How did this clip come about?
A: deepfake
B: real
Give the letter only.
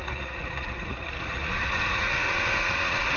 A